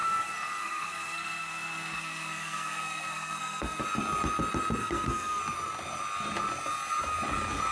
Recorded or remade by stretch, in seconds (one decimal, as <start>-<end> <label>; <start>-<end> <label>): 0.0-3.8 remade; 3.8-4.8 recorded; 4.8-5.4 remade; 5.4-7.7 recorded